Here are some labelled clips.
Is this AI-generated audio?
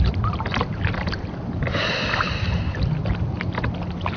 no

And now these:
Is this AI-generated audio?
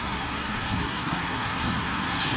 yes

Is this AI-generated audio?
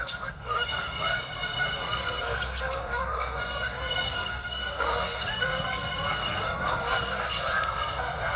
yes